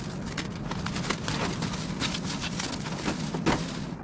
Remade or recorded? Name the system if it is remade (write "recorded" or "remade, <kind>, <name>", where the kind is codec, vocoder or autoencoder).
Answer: recorded